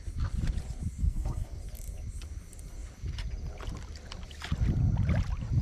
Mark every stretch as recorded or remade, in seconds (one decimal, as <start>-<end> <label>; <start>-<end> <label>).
0.0-1.0 recorded; 1.0-1.6 remade; 1.6-5.6 recorded